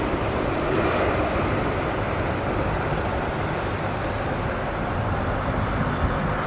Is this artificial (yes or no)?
no